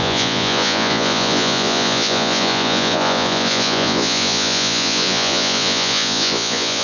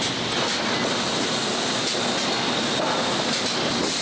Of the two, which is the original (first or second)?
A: second